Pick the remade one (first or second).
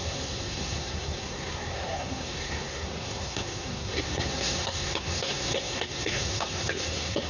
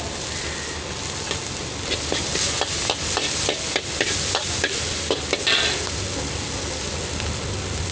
first